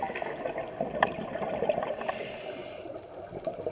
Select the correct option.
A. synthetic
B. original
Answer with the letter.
B